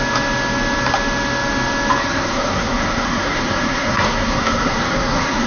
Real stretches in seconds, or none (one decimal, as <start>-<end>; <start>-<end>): 0.0-2.0